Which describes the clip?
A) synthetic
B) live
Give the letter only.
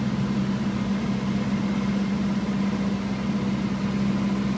B